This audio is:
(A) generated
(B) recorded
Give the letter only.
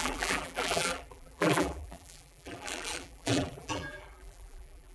A